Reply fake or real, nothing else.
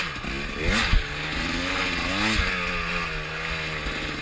real